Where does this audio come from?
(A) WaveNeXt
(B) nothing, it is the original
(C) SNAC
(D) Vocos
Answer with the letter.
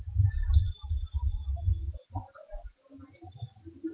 B